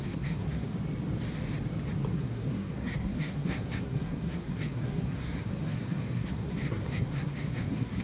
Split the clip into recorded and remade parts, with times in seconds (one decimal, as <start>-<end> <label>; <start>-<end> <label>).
0.0-0.7 remade; 0.7-2.1 recorded; 2.1-8.0 remade